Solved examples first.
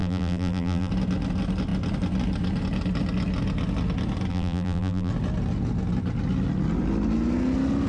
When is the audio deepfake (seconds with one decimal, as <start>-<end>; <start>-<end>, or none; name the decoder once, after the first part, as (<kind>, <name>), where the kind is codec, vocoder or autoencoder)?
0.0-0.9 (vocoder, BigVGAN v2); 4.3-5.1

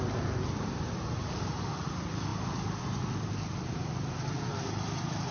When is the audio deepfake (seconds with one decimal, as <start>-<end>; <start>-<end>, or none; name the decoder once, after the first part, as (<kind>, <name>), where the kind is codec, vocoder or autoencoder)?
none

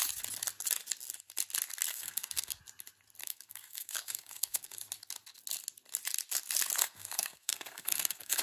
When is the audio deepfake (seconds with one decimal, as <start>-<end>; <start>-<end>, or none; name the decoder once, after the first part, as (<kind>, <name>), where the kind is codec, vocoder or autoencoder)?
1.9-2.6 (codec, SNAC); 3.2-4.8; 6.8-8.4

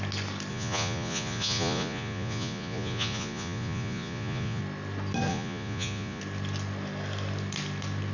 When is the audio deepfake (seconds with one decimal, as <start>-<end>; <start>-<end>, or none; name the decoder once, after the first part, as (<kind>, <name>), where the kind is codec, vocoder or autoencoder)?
0.5-4.6 (vocoder, Vocos); 5.3-6.2